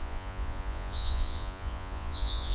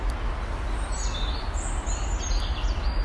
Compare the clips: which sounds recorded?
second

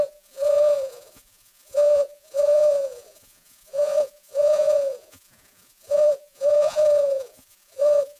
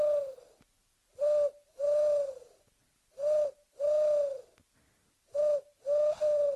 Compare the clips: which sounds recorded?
second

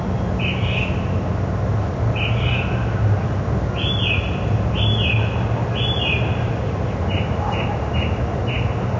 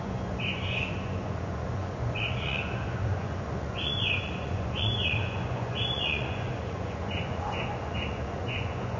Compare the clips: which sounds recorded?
first